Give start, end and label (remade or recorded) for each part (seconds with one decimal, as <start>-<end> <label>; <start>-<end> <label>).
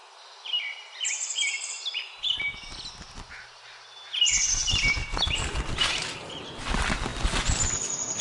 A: 0.0-2.2 remade; 2.2-5.0 recorded; 5.0-6.3 remade; 6.3-8.2 recorded